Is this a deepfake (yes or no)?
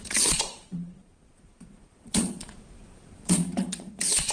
yes